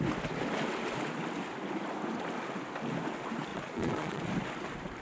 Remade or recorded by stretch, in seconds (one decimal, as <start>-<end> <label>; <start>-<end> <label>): 0.0-3.5 recorded; 3.5-4.2 remade; 4.2-5.0 recorded